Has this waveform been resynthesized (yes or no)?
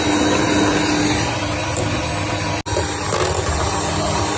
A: no